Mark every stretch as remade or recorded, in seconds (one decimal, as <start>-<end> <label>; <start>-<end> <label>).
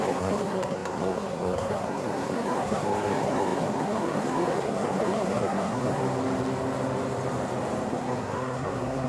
0.0-6.0 remade; 6.0-7.9 recorded; 7.9-9.1 remade